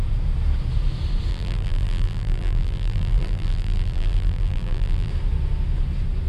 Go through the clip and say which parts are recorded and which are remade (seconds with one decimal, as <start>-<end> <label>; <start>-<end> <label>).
0.0-1.3 recorded; 1.3-5.1 remade; 5.1-6.3 recorded